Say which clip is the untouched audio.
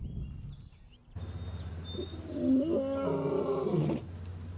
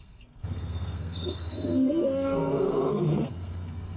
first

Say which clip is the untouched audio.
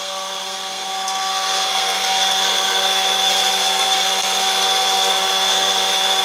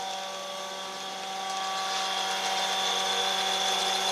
second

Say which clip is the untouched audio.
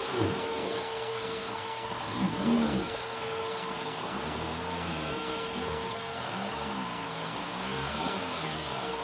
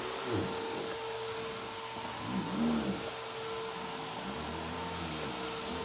second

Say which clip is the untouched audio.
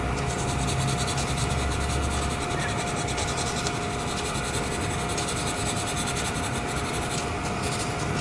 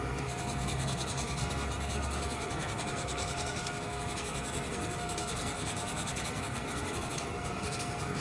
first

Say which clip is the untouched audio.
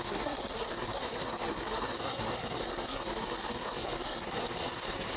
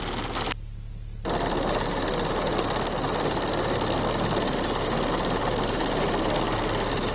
second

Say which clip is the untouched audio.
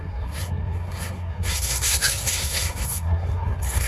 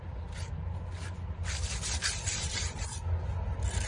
second